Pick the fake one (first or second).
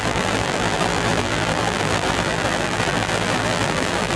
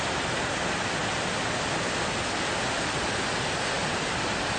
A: first